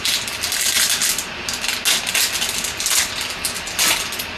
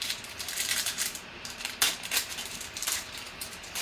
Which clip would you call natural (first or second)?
first